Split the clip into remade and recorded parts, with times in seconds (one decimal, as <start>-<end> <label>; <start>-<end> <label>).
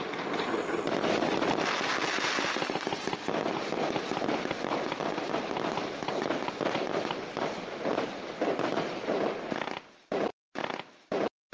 0.0-5.0 recorded; 5.0-8.8 remade; 8.8-11.5 recorded